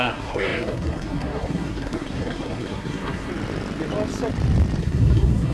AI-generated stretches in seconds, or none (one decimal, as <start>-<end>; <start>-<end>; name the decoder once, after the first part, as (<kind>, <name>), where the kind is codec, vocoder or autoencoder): 0.0-3.3 (codec, SNAC); 4.8-5.5